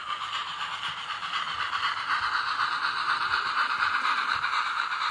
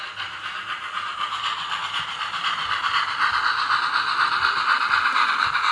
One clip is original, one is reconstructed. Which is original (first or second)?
second